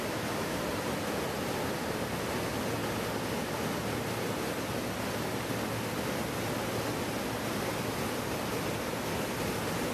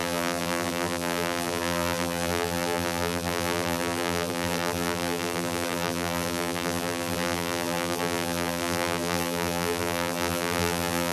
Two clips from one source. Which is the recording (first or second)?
first